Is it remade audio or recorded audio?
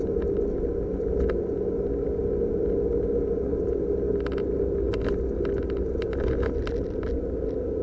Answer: recorded